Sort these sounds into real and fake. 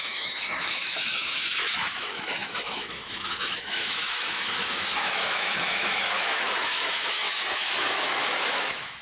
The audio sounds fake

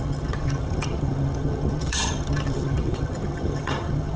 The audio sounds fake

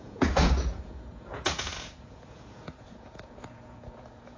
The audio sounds fake